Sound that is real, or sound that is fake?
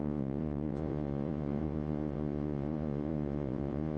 fake